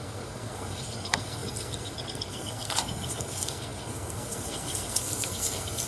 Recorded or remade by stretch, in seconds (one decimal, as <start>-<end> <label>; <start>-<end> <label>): 0.0-5.9 remade